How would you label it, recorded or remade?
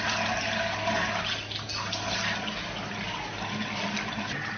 recorded